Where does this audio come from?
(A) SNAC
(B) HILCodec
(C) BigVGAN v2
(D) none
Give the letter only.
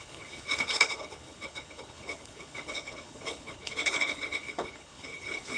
B